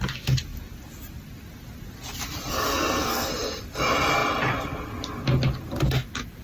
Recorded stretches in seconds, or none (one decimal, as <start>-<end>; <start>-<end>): 0.0-2.5; 3.3-6.4